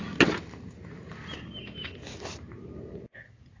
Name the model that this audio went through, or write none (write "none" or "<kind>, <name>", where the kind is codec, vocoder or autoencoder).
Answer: none